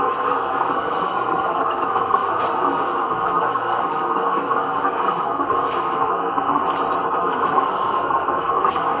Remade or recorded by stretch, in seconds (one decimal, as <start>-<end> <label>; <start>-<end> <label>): 0.0-6.6 remade; 6.6-7.2 recorded; 7.2-9.0 remade